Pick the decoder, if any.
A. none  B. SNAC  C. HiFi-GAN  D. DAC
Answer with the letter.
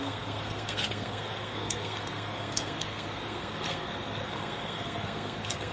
B